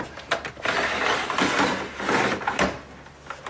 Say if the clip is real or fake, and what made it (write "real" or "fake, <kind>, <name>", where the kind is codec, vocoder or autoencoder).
real